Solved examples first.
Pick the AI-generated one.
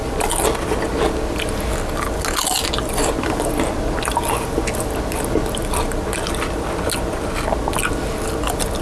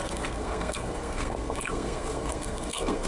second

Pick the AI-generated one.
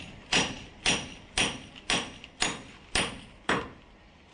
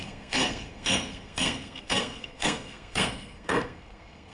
second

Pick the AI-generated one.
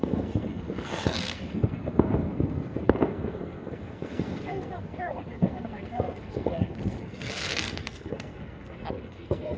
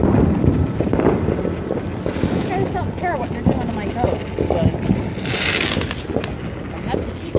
first